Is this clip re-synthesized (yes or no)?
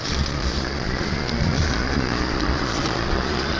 yes